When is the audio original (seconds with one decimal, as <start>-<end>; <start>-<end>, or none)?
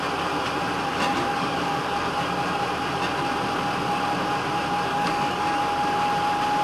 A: 0.0-0.9; 2.1-4.9; 5.6-6.6